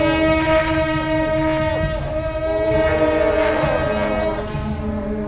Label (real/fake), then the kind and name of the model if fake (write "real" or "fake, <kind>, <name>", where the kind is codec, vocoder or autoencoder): real